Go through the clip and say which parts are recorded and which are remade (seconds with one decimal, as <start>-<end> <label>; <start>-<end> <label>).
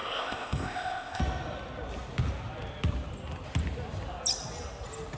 0.0-1.2 remade; 1.2-5.2 recorded